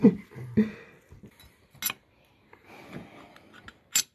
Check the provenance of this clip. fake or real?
real